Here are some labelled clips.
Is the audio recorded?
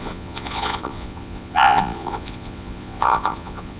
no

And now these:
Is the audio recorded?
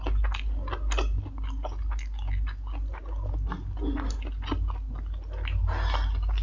yes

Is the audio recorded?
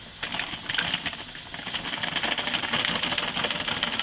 yes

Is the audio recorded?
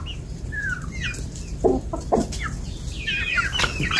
yes